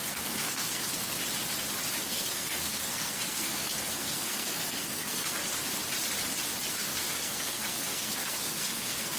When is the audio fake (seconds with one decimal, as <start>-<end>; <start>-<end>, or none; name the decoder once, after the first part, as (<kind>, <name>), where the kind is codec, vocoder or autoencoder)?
0.0-1.2 (codec, SNAC); 2.0-5.4; 6.7-9.2